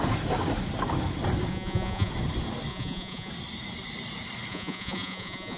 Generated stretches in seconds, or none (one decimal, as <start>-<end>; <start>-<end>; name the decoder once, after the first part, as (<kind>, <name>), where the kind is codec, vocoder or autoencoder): 1.5-2.1 (vocoder, Vocos); 2.7-3.3; 4.5-5.6